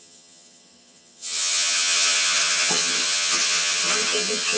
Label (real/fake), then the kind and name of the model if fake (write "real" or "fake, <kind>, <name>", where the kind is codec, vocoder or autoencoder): fake, vocoder, HiFi-GAN